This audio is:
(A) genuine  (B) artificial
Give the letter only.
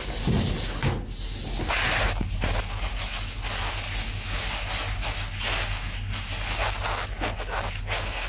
A